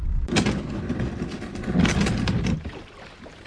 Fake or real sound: fake